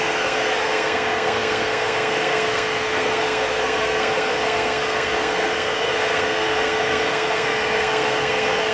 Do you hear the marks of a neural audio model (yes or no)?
yes